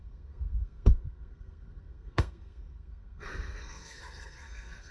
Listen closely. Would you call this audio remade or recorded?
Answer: remade